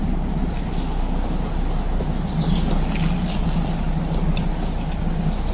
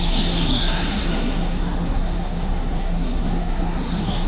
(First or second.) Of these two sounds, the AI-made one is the second